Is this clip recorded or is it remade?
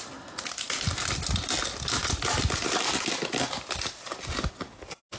recorded